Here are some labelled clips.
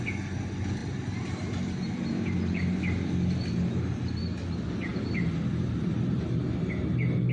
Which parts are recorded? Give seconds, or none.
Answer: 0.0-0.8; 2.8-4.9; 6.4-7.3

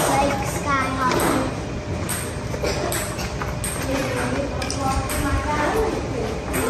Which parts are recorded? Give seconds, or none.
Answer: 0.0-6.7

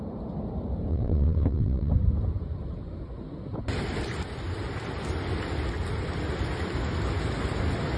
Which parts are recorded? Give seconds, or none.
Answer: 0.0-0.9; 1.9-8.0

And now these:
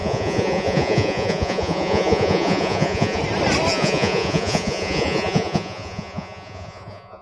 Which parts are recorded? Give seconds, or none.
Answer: 3.2-3.7

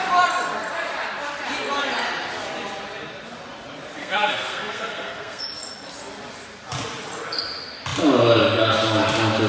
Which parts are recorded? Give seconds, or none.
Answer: 0.0-4.0; 5.4-9.5

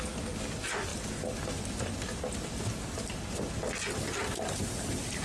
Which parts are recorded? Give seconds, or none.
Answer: 0.0-5.2